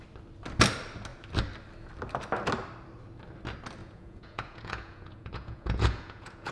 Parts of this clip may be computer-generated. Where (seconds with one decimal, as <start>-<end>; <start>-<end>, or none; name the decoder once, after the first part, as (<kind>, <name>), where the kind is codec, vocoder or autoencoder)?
3.8-6.5 (vocoder, Vocos)